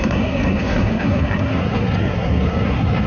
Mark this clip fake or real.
fake